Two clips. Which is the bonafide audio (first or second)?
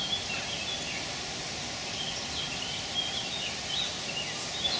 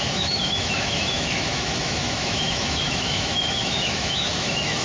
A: first